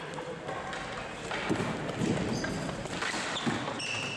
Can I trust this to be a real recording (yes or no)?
yes